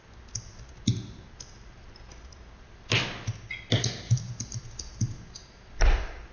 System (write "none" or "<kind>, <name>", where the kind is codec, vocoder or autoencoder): none